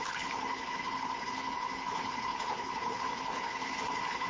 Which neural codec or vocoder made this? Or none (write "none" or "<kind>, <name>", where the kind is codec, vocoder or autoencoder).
codec, HILCodec